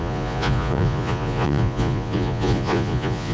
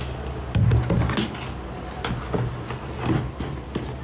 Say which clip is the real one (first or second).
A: second